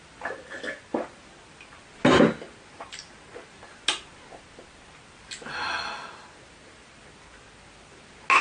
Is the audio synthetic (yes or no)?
no